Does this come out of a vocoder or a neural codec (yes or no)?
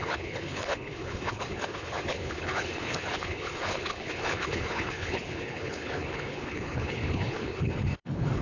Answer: yes